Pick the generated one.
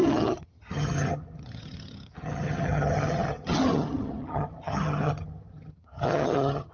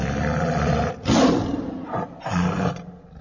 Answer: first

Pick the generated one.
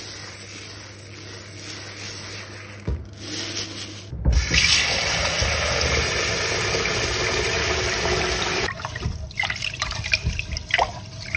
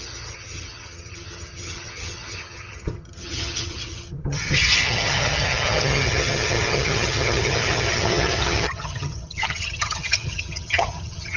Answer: second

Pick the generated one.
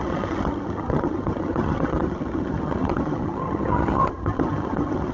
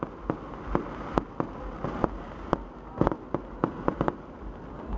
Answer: first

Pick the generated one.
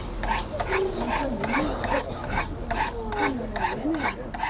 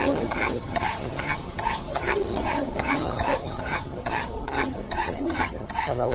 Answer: second